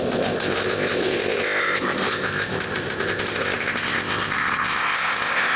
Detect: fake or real fake